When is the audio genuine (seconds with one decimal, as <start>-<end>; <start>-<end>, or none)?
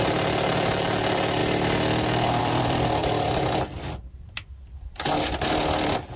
1.4-2.4; 3.0-6.2